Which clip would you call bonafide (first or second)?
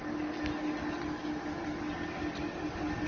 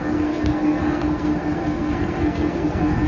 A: first